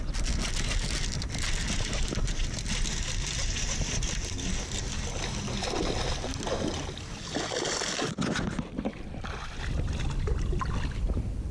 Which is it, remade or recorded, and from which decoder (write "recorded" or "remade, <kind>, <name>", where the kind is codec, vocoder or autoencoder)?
recorded